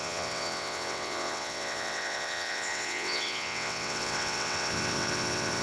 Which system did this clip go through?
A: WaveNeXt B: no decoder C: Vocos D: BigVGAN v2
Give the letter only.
A